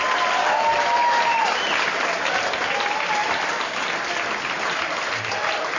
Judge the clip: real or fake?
real